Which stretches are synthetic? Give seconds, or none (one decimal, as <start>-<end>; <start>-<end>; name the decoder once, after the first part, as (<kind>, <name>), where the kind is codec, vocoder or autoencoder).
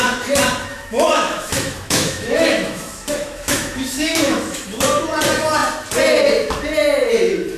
0.7-4.8 (autoencoder, DAC-VAE)